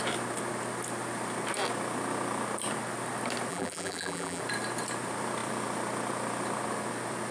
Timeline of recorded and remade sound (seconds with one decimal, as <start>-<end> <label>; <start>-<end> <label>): 0.0-3.5 recorded; 3.5-4.4 remade; 4.4-7.3 recorded